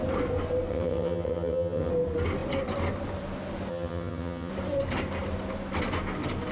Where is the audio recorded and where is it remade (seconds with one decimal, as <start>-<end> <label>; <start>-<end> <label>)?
0.0-0.7 recorded; 0.7-1.9 remade; 1.9-3.7 recorded; 3.7-4.5 remade; 4.5-6.5 recorded